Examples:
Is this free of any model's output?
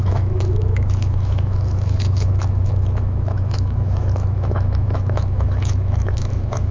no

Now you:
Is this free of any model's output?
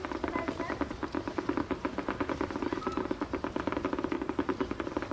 yes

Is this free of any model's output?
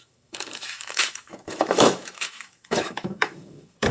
no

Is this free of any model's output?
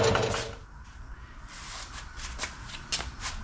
yes